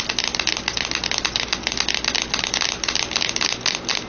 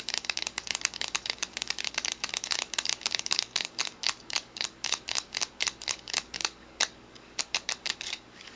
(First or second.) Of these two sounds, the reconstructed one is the second